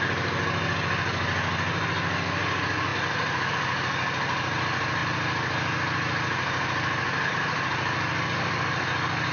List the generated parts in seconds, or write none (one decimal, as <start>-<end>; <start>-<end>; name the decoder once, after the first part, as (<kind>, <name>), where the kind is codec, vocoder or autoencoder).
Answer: none